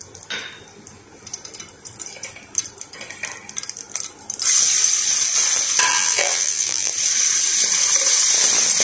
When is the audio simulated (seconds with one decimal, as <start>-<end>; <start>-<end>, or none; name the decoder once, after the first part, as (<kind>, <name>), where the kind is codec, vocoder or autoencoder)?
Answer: 5.9-6.9 (vocoder, BigVGAN v2)